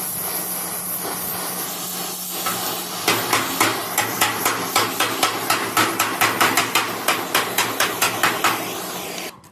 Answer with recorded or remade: recorded